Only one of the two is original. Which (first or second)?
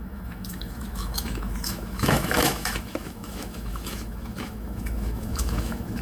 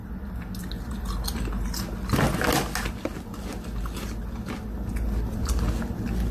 second